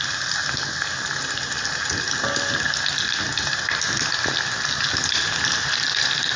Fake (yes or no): no